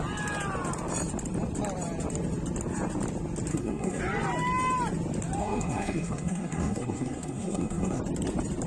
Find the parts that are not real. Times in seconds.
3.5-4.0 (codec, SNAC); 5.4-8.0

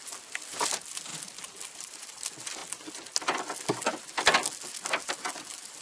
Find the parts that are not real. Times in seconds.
none

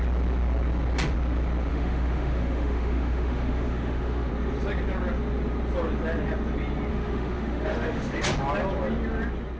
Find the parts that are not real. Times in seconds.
1.7-4.3 (autoencoder, DAC-VAE); 6.9-8.2

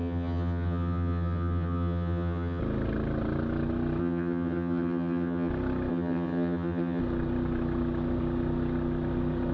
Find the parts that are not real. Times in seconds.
0.0-2.6 (vocoder, HiFi-GAN); 4.0-5.5; 5.9-7.0

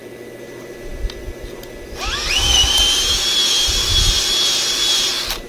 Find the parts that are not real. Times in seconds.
none

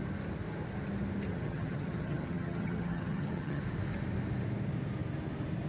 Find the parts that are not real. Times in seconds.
1.3-3.6 (vocoder, HiFi-GAN)

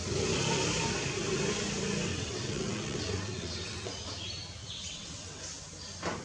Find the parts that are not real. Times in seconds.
2.1-3.9 (vocoder, WaveNeXt); 4.6-5.4

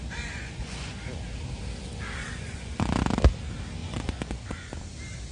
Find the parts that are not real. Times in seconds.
0.4-0.9 (vocoder, Vocos); 2.3-2.9; 3.8-4.8